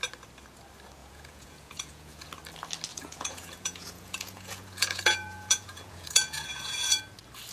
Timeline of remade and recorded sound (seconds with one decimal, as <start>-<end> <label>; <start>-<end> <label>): 0.0-1.0 recorded; 1.0-2.3 remade; 2.3-2.9 recorded; 2.9-7.0 remade; 7.0-7.5 recorded

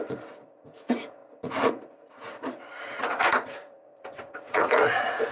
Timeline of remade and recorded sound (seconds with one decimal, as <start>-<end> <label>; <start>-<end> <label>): 0.0-5.3 remade

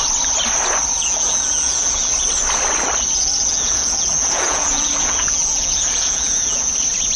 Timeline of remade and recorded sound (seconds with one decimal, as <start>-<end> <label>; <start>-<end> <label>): 0.0-1.0 recorded; 1.0-2.1 remade; 2.1-3.2 recorded; 3.2-6.7 remade; 6.7-7.2 recorded